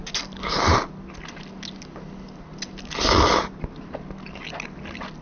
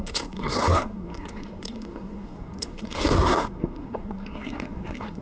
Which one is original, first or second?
first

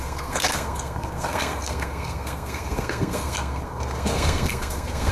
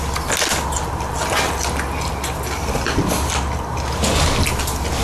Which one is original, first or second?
second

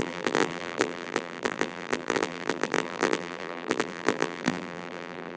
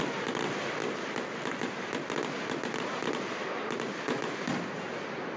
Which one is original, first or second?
second